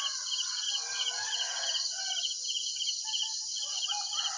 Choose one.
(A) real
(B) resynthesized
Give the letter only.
A